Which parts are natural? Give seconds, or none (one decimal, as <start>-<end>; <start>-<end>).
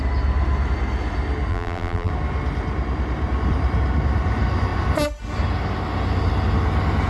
0.0-1.5; 2.1-7.1